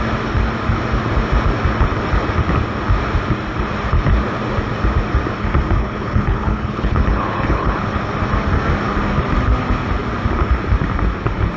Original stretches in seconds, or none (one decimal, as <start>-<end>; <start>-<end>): 0.0-5.8; 8.0-11.6